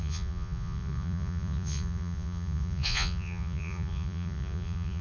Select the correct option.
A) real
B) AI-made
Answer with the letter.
B